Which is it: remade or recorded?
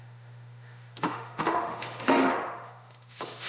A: remade